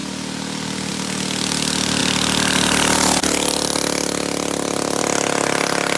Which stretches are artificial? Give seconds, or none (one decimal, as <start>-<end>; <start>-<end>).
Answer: none